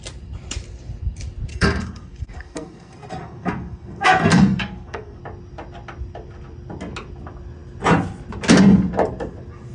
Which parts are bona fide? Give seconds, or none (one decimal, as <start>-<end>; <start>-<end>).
0.0-1.5; 5.2-9.7

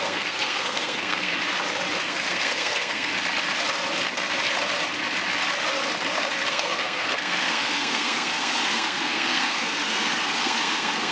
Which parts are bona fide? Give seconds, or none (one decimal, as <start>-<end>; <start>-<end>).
1.3-2.0; 3.1-6.5

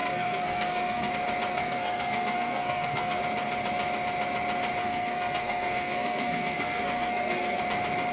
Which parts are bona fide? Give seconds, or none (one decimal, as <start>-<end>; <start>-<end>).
1.1-1.5; 3.2-4.8; 7.6-8.1

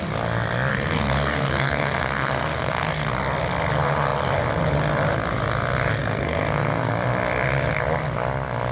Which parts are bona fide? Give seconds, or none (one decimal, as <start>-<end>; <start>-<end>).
0.0-0.7; 3.1-6.0; 6.9-8.7